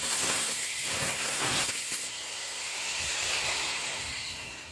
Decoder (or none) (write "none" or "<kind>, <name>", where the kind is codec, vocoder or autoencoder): codec, SNAC